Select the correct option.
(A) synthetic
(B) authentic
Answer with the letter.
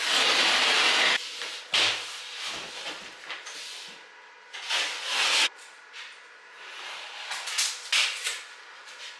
B